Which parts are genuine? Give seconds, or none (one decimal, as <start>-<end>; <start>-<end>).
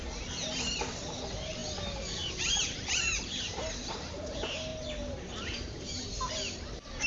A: none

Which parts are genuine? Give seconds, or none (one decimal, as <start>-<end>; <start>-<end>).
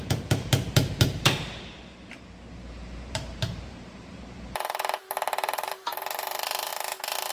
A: 6.7-7.3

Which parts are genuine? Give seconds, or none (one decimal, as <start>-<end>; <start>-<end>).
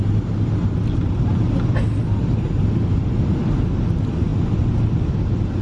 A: 0.0-5.6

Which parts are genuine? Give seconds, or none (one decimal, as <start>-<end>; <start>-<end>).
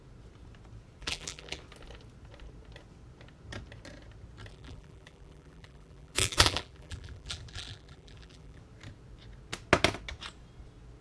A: 0.0-1.0; 1.6-4.5; 8.6-11.0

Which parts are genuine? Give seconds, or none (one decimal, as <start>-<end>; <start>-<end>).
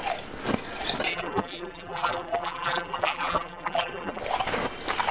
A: 0.0-1.1; 4.2-5.1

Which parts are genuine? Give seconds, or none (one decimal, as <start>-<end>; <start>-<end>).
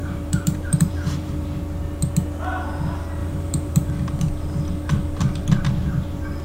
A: 1.6-3.2; 3.9-5.8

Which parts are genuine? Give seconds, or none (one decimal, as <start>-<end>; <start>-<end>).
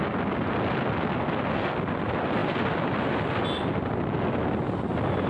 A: 0.0-5.3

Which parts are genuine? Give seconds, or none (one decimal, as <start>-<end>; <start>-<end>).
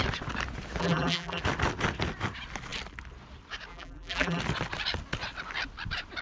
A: 0.0-0.8; 1.4-3.7; 4.4-6.2